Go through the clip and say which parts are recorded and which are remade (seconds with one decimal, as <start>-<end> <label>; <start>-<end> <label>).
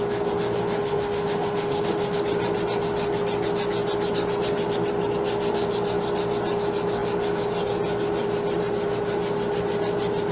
0.0-0.8 recorded; 0.8-2.2 remade; 2.2-10.3 recorded